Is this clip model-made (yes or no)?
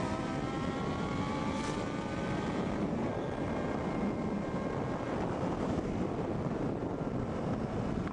yes